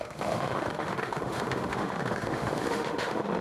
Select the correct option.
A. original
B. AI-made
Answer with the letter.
B